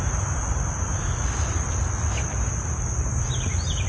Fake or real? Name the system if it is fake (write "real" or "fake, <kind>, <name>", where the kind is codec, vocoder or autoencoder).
real